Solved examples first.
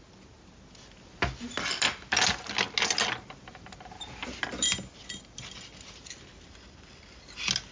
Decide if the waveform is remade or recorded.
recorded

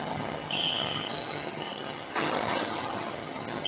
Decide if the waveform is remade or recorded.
remade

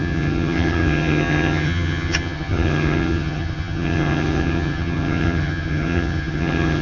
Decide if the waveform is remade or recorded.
remade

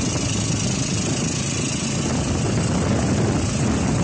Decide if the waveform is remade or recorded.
recorded